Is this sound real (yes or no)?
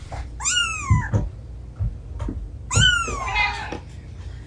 yes